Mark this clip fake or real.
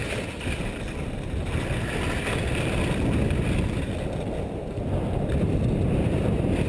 real